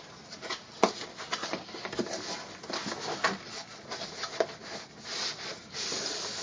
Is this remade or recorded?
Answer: recorded